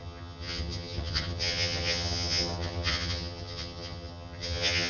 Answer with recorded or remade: remade